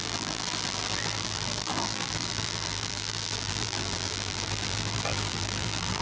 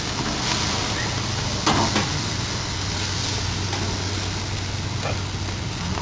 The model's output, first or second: first